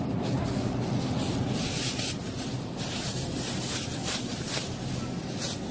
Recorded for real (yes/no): yes